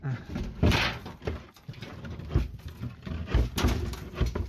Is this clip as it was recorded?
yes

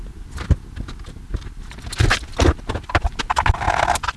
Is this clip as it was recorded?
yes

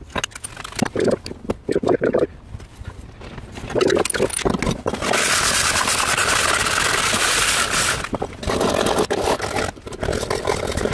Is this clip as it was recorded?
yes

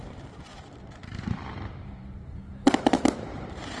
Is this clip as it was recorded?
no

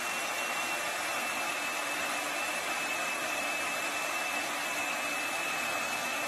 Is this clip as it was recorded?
yes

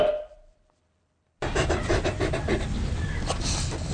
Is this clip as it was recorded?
no